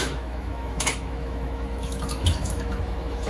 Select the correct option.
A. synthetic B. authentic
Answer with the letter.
A